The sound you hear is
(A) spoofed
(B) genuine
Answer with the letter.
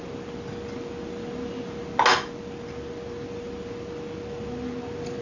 B